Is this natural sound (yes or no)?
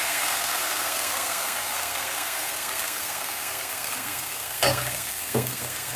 no